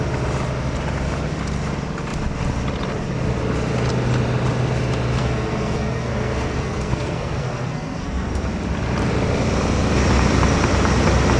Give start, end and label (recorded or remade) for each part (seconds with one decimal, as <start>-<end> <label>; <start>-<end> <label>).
0.0-5.2 recorded; 5.2-8.5 remade; 8.5-11.4 recorded